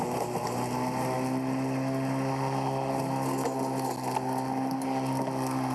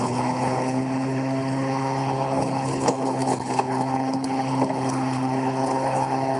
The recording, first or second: first